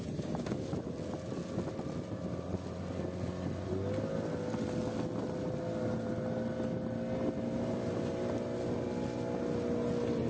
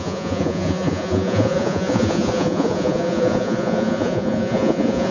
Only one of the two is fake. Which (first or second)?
second